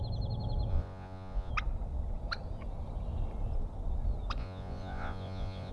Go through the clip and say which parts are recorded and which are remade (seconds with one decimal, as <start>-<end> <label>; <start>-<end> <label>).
0.0-0.7 recorded; 0.7-1.5 remade; 1.5-4.4 recorded; 4.4-5.7 remade